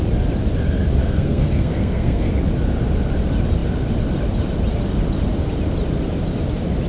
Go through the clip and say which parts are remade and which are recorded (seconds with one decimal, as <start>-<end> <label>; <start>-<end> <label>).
0.0-1.0 recorded; 1.0-2.3 remade; 2.3-6.9 recorded

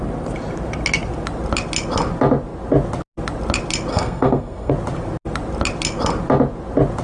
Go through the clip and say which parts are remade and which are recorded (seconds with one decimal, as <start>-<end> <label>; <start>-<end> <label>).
0.0-3.9 recorded; 3.9-4.7 remade; 4.7-7.0 recorded

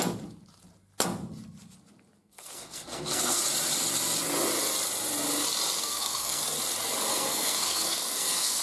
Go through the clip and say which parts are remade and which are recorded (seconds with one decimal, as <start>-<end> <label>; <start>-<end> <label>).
0.0-2.2 recorded; 2.2-3.4 remade; 3.4-5.8 recorded; 5.8-6.4 remade; 6.4-7.1 recorded; 7.1-8.6 remade

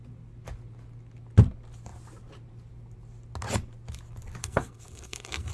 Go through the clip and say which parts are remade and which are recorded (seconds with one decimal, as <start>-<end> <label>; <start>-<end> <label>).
0.0-4.4 recorded; 4.4-5.5 remade

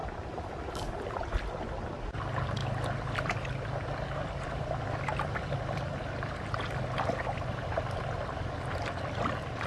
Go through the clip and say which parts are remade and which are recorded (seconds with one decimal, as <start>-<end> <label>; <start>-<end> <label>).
0.0-9.7 recorded

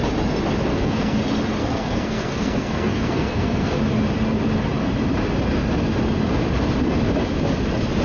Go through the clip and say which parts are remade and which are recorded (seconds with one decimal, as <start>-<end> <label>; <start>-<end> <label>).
0.0-0.7 recorded; 0.7-1.2 remade; 1.2-1.6 recorded; 1.6-3.8 remade; 3.8-8.0 recorded